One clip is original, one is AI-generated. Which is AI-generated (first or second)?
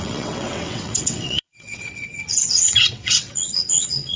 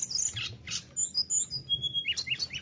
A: first